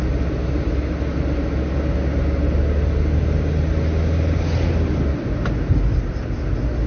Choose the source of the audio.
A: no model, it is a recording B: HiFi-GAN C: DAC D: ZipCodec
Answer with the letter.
A